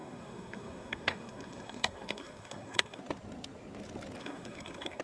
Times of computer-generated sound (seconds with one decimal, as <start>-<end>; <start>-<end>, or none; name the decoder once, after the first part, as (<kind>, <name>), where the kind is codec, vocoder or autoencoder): 0.0-3.0 (codec, SNAC); 4.2-5.0